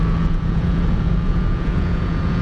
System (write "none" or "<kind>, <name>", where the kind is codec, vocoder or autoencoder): vocoder, Vocos